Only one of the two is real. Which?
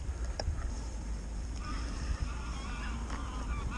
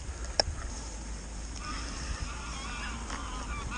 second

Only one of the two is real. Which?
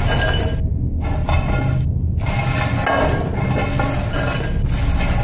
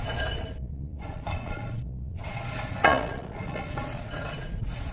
first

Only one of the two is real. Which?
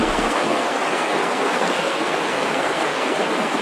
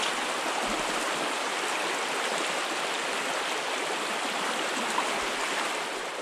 second